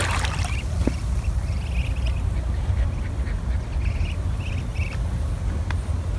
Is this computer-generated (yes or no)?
no